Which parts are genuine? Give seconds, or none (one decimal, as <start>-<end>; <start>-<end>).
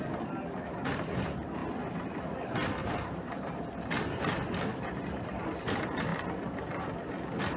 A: 0.0-2.8; 3.7-7.6